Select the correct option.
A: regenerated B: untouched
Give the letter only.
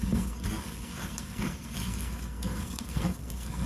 A